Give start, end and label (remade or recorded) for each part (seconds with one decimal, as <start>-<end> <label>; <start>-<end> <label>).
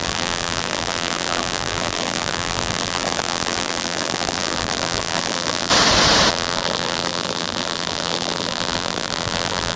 0.0-5.7 remade; 5.7-6.3 recorded; 6.3-9.8 remade